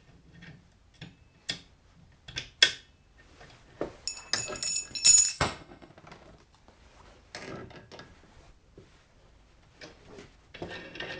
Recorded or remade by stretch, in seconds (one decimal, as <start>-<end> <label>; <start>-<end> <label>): 0.0-5.3 recorded; 5.3-5.9 remade; 5.9-11.2 recorded

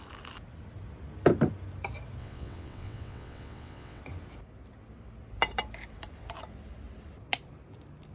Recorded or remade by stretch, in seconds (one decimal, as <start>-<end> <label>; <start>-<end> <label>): 0.0-2.2 recorded; 2.2-4.0 remade; 4.0-8.1 recorded

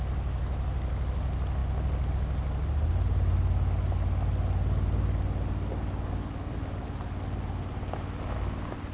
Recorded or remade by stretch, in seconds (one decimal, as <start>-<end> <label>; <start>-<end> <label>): 0.0-8.9 recorded

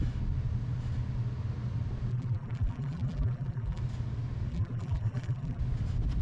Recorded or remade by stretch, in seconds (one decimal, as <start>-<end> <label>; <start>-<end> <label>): 0.0-2.1 recorded; 2.1-3.8 remade; 3.8-4.5 recorded; 4.5-5.6 remade; 5.6-6.2 recorded

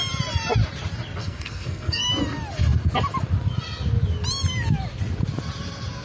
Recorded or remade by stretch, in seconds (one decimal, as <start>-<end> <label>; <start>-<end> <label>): 0.0-1.2 recorded; 1.2-2.1 remade; 2.1-6.0 recorded